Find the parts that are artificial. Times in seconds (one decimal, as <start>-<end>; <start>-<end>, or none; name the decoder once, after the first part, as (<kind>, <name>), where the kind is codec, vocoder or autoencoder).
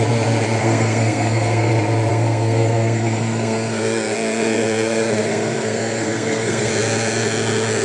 0.6-1.7 (codec, SNAC); 2.1-6.7